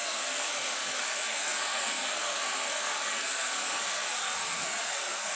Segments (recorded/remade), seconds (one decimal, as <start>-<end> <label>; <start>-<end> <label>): 0.0-5.4 remade